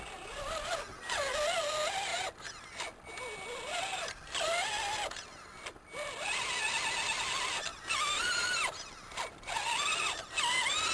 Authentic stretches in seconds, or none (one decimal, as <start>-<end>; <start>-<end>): 0.0-7.7; 9.2-10.9

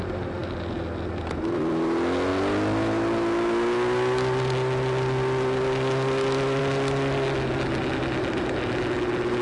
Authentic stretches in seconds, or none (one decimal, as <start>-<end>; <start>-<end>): 0.0-9.4